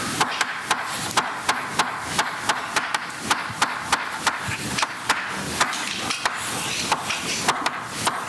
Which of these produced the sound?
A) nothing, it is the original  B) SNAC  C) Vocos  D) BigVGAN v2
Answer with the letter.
A